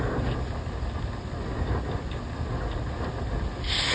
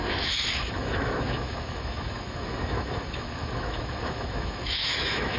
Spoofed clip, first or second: second